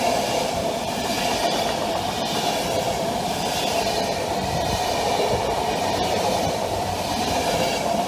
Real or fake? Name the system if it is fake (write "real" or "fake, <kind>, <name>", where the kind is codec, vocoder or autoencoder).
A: fake, vocoder, BigVGAN v2